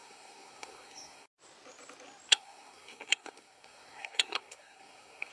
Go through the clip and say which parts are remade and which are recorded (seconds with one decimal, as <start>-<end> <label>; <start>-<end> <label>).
0.0-1.3 remade; 1.3-2.3 recorded; 2.3-5.3 remade